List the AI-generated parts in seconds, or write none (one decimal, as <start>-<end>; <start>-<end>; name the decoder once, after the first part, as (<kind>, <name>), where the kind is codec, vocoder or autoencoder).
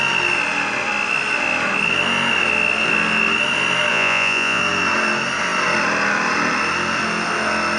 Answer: 3.9-4.6 (vocoder, Vocos)